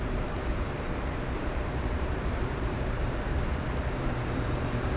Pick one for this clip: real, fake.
fake